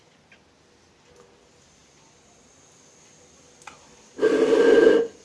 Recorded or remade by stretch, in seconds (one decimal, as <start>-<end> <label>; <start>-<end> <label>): 0.0-5.2 recorded